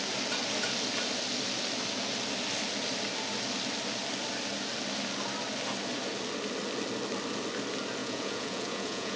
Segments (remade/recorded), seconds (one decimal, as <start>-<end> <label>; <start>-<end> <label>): 0.0-8.0 recorded; 8.0-9.2 remade